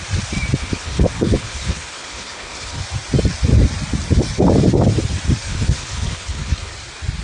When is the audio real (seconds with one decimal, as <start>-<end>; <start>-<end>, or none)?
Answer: 0.0-0.6; 2.8-5.4; 6.7-7.2